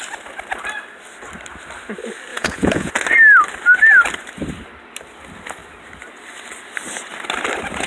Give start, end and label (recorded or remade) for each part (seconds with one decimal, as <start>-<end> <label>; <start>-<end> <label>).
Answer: 0.0-2.3 recorded; 2.3-2.9 remade; 2.9-7.9 recorded